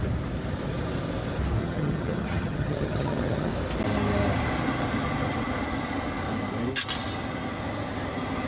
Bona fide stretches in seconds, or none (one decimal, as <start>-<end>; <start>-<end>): 0.0-1.6; 3.5-8.5